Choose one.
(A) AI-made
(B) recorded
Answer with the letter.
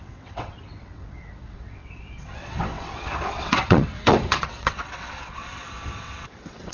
A